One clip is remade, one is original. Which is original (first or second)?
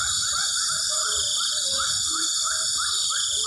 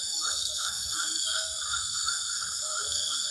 first